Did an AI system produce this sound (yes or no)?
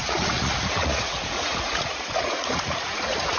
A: yes